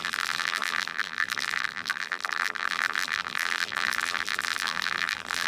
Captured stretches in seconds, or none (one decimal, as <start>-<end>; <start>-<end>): none

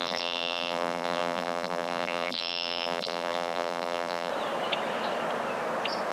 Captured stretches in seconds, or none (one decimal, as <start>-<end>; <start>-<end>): 4.3-6.1

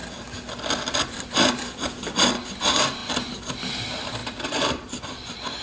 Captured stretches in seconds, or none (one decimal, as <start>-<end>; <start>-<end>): 0.0-1.1; 3.0-3.7

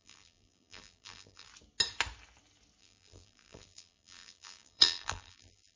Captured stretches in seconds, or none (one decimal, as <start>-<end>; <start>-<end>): 1.5-2.8

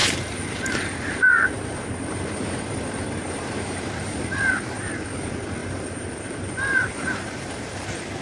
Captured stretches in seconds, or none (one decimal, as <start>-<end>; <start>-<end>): 4.9-5.6